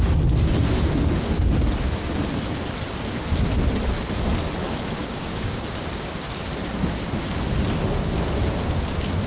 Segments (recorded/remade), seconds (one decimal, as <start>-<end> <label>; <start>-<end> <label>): 0.0-5.0 recorded; 5.0-6.1 remade; 6.1-9.3 recorded